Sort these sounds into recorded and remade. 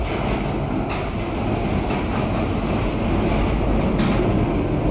recorded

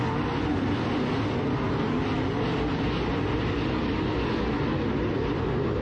recorded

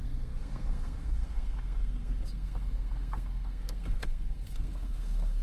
remade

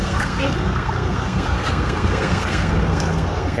remade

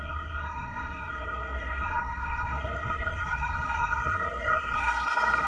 remade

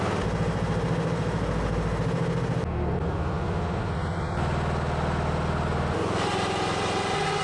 recorded